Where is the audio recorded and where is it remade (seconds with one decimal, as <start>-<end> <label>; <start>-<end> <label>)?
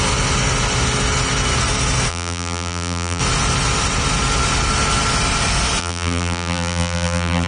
0.0-2.1 recorded; 2.1-3.2 remade; 3.2-5.8 recorded; 5.8-7.5 remade